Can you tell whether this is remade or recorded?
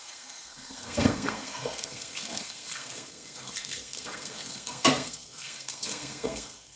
remade